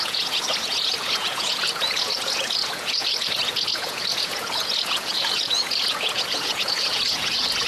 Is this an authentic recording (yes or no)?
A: no